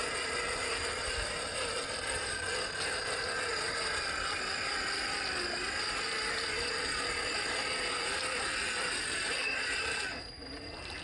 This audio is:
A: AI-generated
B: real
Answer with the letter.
B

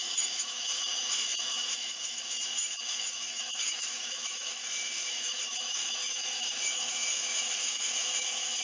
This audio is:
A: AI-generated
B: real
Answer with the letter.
A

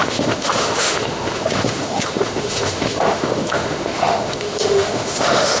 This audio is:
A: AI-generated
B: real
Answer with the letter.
A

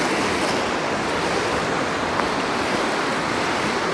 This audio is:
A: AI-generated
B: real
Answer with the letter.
B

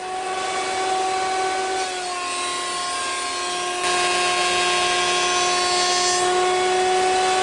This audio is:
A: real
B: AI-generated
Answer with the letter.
A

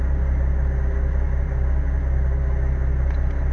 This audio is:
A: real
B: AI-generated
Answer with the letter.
A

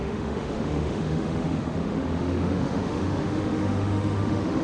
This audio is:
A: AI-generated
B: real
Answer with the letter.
A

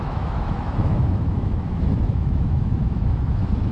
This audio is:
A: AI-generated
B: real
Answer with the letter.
A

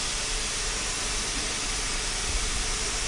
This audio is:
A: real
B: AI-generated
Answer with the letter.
A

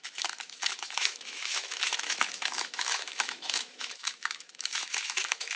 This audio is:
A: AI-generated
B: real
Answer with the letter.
A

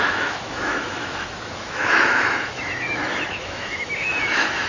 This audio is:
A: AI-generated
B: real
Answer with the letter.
A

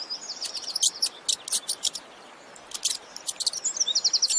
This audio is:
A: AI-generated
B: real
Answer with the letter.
B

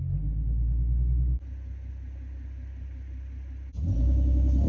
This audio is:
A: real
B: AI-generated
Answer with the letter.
A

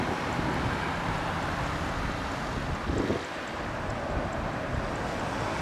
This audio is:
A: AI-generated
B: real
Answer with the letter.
B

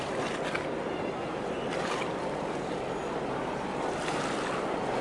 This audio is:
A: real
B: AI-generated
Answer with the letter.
A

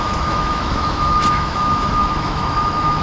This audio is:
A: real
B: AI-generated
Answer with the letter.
B